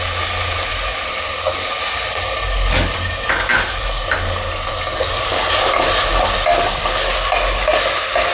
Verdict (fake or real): real